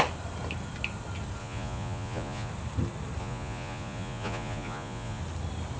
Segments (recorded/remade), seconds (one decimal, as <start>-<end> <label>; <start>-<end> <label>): 0.0-1.4 recorded; 1.4-2.5 remade; 2.5-3.2 recorded; 3.2-5.2 remade; 5.2-5.8 recorded